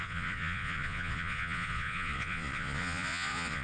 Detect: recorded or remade remade